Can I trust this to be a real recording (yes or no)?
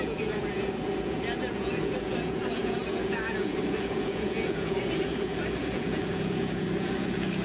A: no